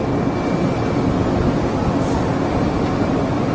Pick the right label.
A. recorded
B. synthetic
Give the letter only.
A